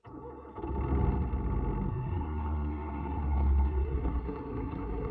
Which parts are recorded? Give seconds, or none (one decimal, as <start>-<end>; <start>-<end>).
0.0-1.9